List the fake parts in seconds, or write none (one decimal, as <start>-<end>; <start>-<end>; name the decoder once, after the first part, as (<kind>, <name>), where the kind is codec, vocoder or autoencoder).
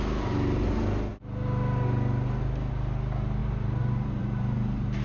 3.4-5.0 (vocoder, BigVGAN v2)